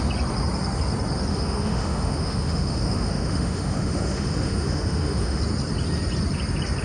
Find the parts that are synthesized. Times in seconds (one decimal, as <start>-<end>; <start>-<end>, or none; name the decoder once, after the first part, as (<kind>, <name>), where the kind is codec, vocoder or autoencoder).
1.3-5.4 (autoencoder, DAC-VAE)